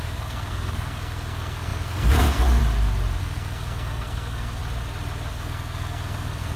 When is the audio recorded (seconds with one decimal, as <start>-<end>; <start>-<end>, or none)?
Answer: 2.6-3.2; 4.6-5.3